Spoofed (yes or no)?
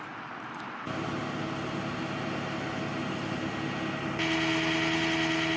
no